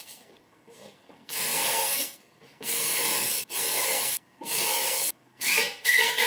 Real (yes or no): no